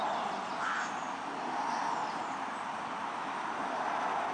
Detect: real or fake real